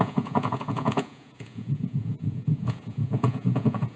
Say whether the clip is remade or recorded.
remade